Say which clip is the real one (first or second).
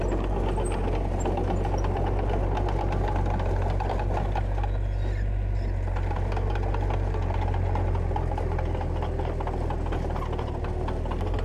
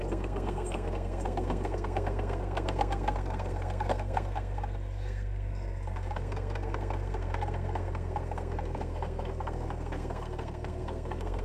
first